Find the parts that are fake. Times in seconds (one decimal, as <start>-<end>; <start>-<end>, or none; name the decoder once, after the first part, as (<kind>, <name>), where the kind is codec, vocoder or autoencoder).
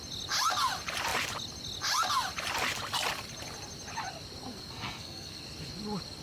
4.5-5.4 (codec, SNAC)